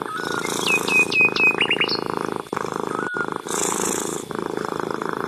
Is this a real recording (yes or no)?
yes